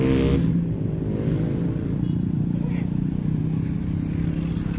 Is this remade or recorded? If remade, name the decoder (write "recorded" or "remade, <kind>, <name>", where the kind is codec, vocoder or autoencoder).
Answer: recorded